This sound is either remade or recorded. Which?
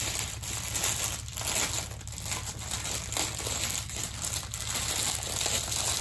recorded